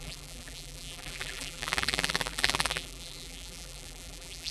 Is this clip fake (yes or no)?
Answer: yes